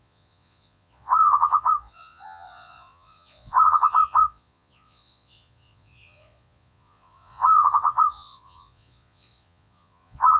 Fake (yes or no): yes